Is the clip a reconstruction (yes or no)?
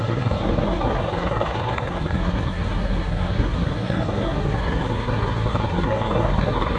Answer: yes